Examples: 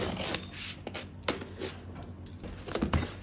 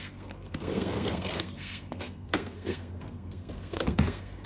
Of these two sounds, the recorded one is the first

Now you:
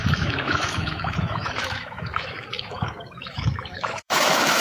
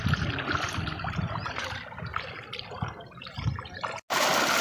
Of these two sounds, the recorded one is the second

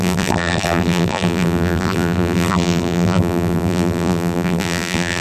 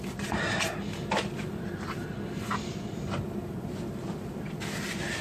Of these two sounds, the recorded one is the second